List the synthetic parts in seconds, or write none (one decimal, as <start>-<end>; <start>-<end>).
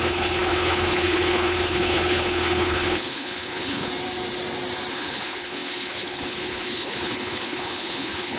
0.0-3.9; 4.9-8.4